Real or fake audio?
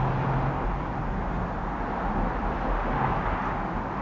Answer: real